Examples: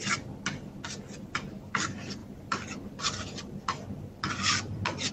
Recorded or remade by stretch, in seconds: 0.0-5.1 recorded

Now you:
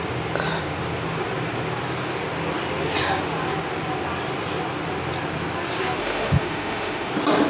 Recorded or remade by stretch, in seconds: 0.0-6.0 recorded; 6.0-7.1 remade; 7.1-7.5 recorded

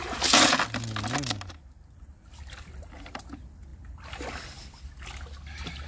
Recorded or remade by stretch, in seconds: 0.0-5.9 recorded

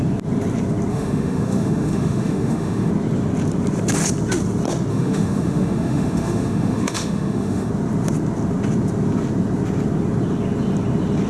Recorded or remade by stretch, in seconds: 0.0-0.9 recorded; 0.9-2.9 remade; 2.9-4.9 recorded; 4.9-7.7 remade; 7.7-11.3 recorded